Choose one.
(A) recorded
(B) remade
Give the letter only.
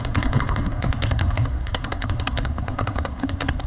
B